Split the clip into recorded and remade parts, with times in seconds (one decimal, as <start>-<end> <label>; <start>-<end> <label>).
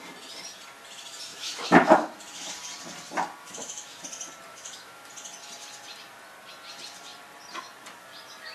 0.0-1.3 recorded; 1.3-2.5 remade; 2.5-3.4 recorded; 3.4-4.0 remade; 4.0-4.5 recorded; 4.5-5.1 remade; 5.1-8.5 recorded